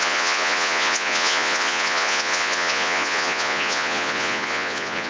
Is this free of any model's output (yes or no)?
no